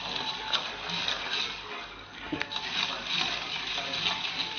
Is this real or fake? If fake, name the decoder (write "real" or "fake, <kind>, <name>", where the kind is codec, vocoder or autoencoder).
real